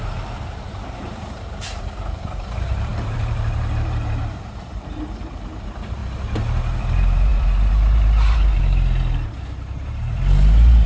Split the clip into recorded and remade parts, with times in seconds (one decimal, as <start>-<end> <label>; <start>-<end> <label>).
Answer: 0.0-6.0 remade; 6.0-6.6 recorded; 6.6-10.9 remade

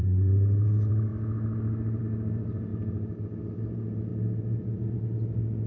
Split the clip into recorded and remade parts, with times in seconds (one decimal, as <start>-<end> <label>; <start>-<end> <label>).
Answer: 0.0-1.1 remade; 1.1-2.0 recorded; 2.0-2.7 remade; 2.7-3.6 recorded; 3.6-4.1 remade; 4.1-5.7 recorded